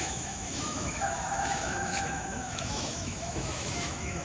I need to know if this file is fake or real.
fake